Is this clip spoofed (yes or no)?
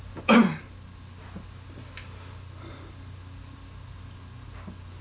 no